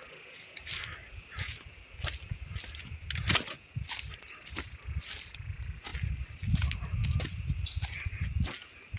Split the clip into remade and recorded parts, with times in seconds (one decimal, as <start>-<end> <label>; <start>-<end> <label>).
0.0-9.0 recorded